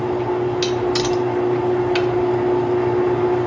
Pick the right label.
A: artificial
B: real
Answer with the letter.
B